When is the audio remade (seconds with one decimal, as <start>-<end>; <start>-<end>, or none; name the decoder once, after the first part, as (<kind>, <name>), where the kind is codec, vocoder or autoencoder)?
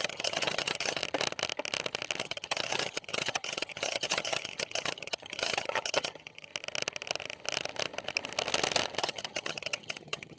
0.0-1.0 (vocoder, HiFi-GAN); 2.2-6.5; 9.0-10.4